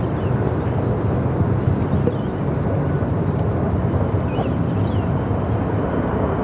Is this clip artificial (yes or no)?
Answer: no